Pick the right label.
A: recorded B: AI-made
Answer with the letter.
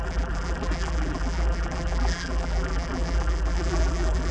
B